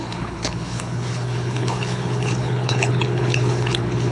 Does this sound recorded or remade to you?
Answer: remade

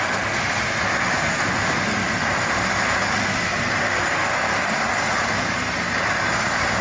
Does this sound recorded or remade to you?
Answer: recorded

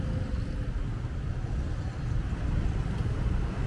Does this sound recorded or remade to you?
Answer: recorded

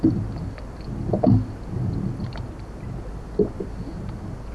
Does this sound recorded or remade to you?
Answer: recorded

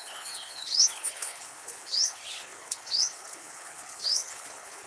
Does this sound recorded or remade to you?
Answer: remade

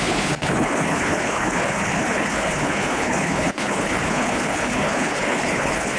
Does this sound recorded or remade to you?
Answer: remade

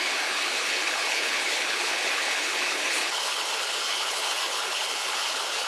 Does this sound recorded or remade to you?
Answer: remade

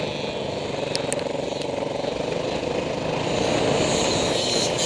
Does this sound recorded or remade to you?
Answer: recorded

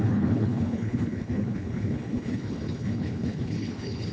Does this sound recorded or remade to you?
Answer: remade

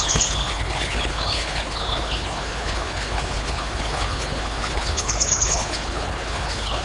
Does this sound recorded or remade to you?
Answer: remade